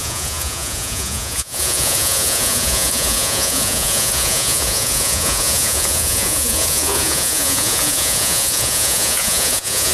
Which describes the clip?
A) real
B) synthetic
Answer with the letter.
B